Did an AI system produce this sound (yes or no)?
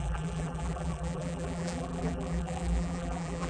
yes